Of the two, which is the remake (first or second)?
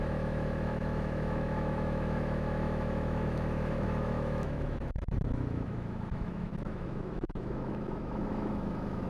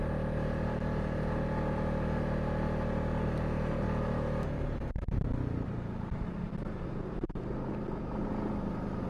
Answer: first